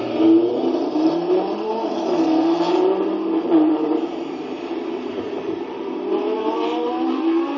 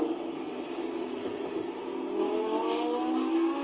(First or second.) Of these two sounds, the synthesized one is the first